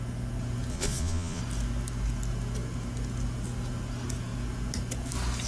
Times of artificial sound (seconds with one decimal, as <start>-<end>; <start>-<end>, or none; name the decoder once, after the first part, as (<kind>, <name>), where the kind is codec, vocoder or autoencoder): 0.7-1.4 (vocoder, Vocos)